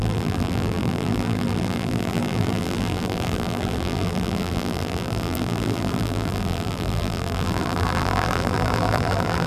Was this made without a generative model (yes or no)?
no